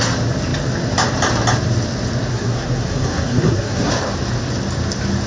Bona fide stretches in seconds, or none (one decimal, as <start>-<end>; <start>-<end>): 0.0-2.3; 3.9-5.3